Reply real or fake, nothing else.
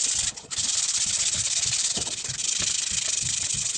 real